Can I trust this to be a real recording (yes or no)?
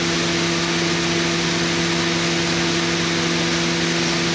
yes